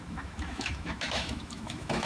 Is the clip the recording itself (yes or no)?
no